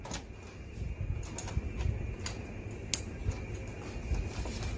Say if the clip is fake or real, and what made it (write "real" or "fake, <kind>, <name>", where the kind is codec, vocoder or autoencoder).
real